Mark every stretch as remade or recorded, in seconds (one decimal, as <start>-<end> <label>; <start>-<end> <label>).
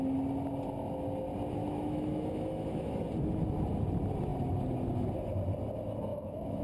0.0-1.6 recorded; 1.6-2.9 remade; 2.9-6.1 recorded; 6.1-6.6 remade